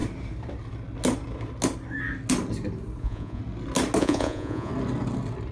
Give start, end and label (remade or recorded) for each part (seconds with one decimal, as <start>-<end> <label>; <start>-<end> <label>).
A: 0.0-3.0 recorded; 3.0-3.4 remade; 3.4-4.0 recorded; 4.0-4.7 remade; 4.7-5.5 recorded